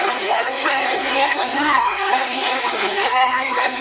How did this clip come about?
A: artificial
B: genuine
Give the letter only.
A